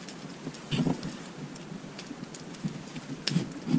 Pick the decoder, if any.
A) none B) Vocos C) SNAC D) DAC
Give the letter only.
A